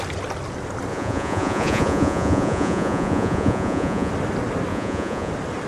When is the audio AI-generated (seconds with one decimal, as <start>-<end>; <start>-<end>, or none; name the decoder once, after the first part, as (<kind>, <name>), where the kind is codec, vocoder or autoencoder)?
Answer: 0.9-4.1 (vocoder, Vocos); 4.7-5.3